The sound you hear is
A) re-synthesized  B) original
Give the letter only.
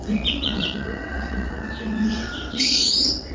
A